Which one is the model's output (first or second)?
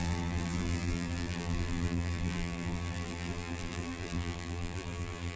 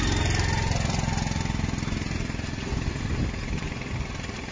first